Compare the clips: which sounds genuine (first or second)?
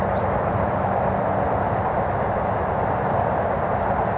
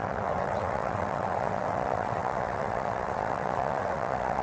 first